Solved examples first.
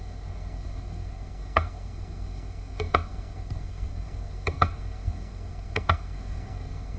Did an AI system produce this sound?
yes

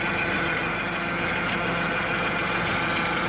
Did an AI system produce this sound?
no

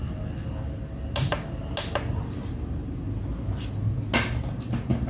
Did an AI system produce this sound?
no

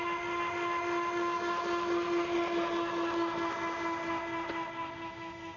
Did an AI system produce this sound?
no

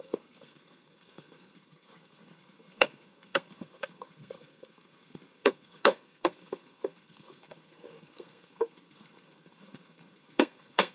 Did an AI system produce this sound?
yes